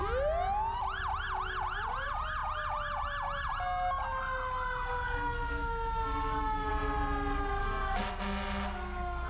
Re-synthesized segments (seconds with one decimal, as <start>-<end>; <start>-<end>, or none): 4.9-6.7; 7.6-8.2